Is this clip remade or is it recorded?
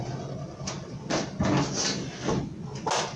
recorded